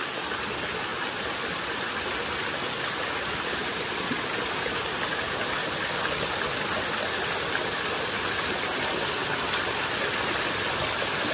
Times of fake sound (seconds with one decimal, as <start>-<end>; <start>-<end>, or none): none